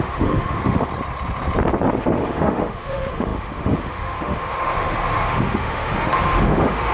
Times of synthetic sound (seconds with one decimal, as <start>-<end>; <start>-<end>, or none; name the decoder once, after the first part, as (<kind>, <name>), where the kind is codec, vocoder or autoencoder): 0.0-0.9 (autoencoder, DAC-VAE); 2.0-6.9